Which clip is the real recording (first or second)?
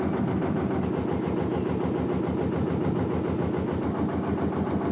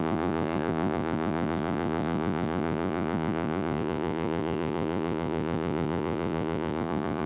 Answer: first